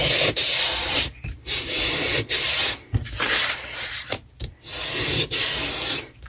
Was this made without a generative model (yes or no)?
no